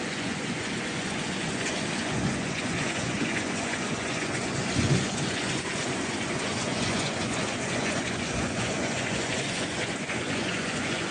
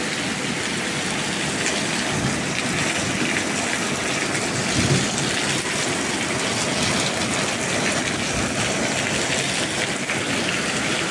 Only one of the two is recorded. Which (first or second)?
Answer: second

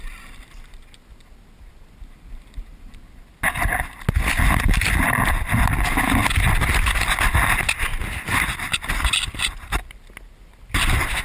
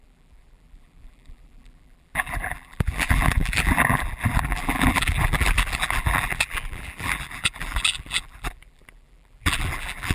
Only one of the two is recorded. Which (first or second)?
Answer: first